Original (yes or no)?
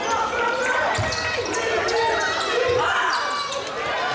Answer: yes